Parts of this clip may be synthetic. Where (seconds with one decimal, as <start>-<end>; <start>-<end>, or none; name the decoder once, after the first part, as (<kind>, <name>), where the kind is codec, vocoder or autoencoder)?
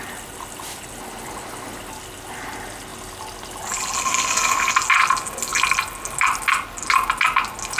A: none